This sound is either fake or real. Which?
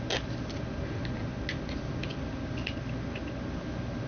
real